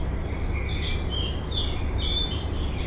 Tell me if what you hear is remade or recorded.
remade